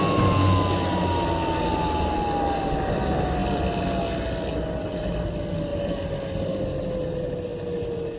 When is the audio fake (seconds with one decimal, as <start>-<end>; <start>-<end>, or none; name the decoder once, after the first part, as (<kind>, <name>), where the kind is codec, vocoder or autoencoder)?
none